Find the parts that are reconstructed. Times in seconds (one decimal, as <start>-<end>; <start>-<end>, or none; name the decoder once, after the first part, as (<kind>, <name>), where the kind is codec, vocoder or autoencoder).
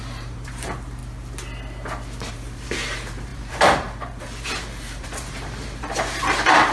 0.0-1.0 (vocoder, BigVGAN v2); 2.3-6.7